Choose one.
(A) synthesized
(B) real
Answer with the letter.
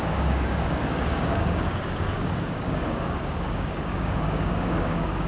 A